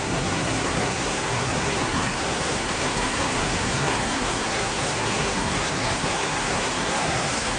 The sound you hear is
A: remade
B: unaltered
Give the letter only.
A